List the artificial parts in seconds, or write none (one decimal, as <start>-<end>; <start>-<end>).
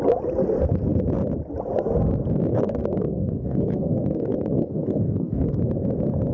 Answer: 2.5-5.6